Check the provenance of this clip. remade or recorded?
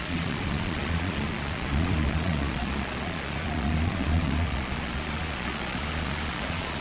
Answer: remade